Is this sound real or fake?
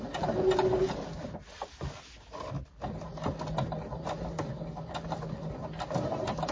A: real